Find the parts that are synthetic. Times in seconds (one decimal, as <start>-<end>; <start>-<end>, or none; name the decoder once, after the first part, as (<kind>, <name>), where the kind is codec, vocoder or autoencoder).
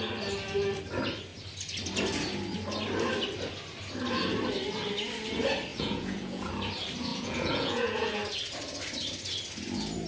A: 5.7-6.5 (vocoder, Vocos); 7.1-8.2